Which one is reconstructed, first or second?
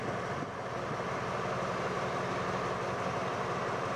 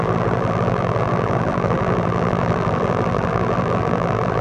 second